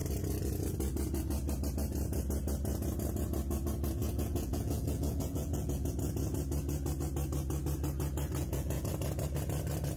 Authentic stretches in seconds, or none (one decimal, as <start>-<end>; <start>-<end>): 0.0-4.0; 5.9-8.4; 8.9-10.0